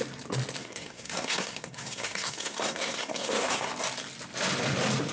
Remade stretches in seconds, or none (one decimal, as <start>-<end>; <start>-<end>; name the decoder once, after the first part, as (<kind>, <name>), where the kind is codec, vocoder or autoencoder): 0.6-3.7 (codec, SNAC)